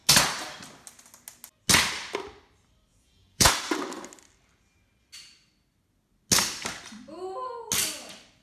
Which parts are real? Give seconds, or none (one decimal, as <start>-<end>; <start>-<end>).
0.0-2.9; 3.5-8.4